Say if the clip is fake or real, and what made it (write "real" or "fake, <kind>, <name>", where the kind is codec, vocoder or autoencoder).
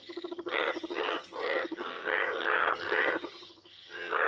fake, vocoder, HiFi-GAN